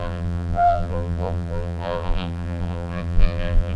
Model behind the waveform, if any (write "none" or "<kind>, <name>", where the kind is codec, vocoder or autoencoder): vocoder, BigVGAN v2